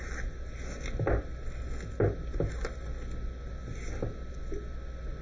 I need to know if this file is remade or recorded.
recorded